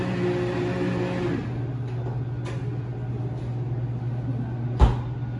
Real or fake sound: real